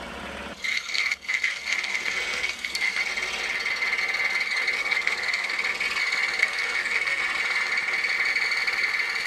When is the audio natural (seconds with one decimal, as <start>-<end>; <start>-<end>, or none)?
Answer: 0.0-0.7; 3.0-4.8; 5.5-6.4; 7.2-9.3

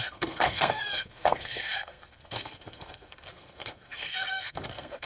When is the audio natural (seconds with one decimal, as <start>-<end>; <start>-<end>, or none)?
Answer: none

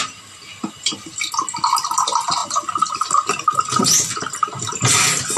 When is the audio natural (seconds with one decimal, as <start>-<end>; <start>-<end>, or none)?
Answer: 0.0-5.4